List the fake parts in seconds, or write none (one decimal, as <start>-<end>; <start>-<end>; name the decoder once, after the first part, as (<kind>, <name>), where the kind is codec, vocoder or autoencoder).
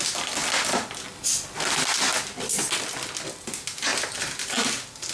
none